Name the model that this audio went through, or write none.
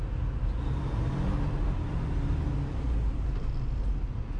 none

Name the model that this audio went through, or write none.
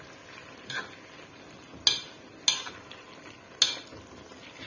none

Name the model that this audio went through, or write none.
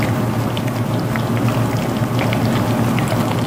none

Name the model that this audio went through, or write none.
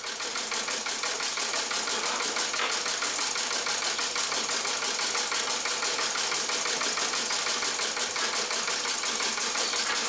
none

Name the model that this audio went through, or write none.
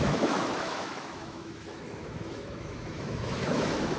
autoencoder, DAC-VAE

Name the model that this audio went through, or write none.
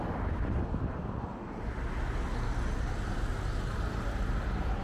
none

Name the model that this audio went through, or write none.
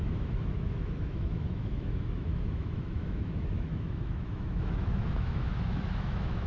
autoencoder, DAC-VAE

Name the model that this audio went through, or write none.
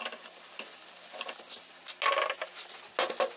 none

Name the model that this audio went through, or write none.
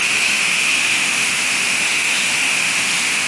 autoencoder, DAC-VAE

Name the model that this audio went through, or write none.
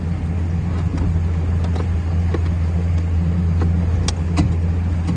none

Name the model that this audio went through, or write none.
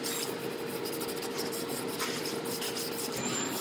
none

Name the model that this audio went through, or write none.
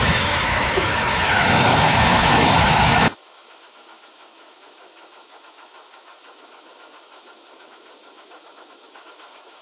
autoencoder, DAC-VAE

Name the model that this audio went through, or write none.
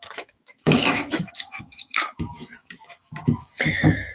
autoencoder, DAC-VAE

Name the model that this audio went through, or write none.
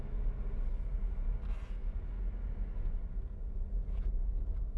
none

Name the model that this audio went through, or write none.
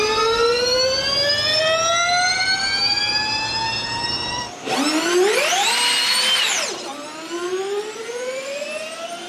none